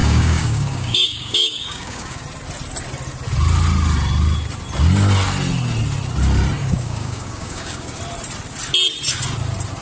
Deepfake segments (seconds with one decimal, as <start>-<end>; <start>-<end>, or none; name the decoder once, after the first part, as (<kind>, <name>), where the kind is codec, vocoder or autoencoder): 0.0-2.2 (codec, DAC); 6.6-8.0